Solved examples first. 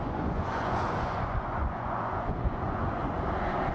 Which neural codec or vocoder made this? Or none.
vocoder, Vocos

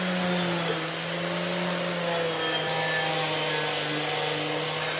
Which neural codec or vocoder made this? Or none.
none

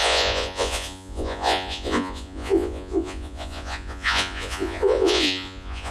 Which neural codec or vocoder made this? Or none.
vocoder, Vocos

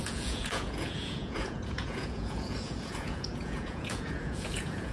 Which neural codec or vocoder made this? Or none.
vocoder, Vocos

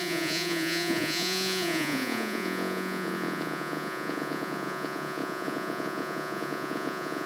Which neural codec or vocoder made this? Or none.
vocoder, Vocos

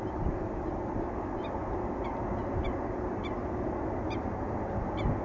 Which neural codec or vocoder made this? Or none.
none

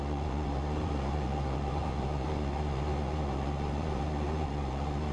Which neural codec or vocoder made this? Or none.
vocoder, Vocos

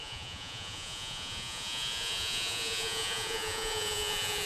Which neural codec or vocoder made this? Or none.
vocoder, Vocos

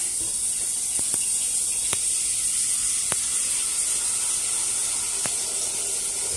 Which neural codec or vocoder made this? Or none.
none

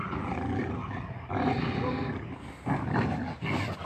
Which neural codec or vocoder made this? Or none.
none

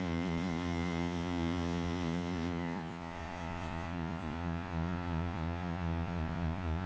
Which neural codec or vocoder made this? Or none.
vocoder, Vocos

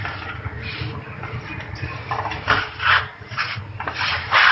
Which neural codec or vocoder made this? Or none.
none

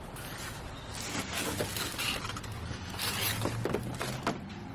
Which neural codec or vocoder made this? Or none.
none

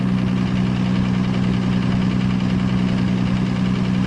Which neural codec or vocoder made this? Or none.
none